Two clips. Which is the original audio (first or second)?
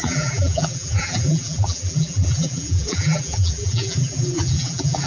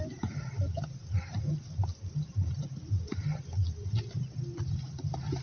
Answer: second